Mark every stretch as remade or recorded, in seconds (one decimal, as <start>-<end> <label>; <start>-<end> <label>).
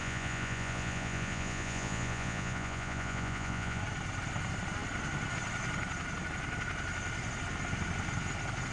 0.0-3.8 remade; 3.8-8.7 recorded